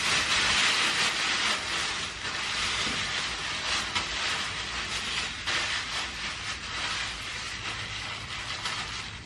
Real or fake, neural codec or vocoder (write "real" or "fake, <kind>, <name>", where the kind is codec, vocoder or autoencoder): real